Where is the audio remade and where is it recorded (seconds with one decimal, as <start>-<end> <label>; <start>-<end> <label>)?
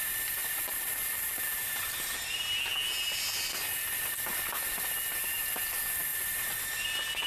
0.0-0.4 recorded; 0.4-2.0 remade; 2.0-7.3 recorded